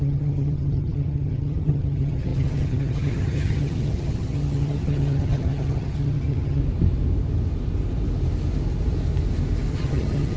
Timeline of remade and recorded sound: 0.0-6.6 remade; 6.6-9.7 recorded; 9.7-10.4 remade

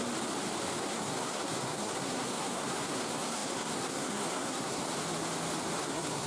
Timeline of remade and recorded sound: 0.0-0.8 recorded; 0.8-4.8 remade; 4.8-5.8 recorded; 5.8-6.3 remade

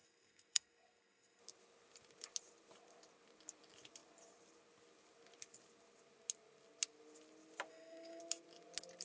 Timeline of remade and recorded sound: 0.0-1.4 remade; 1.4-7.7 recorded; 7.7-8.2 remade; 8.2-9.0 recorded

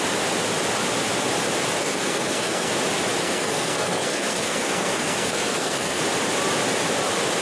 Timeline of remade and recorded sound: 0.0-1.8 recorded; 1.8-2.7 remade; 2.7-3.2 recorded; 3.2-6.0 remade; 6.0-7.4 recorded

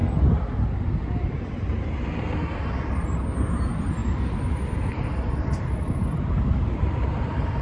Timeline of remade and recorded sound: 0.0-3.6 recorded; 3.6-7.6 remade

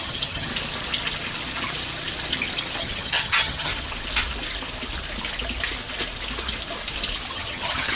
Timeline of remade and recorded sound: 0.0-0.5 remade; 0.5-2.8 recorded; 2.8-3.7 remade; 3.7-7.3 recorded; 7.3-8.0 remade

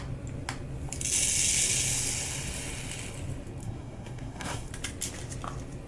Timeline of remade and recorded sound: 0.0-3.6 recorded; 3.6-4.7 remade; 4.7-5.9 recorded